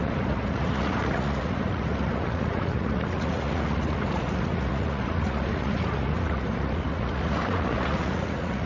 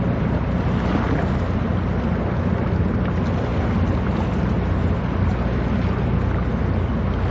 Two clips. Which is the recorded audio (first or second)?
second